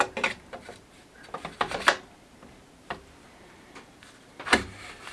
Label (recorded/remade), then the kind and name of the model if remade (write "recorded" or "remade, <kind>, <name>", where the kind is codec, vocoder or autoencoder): recorded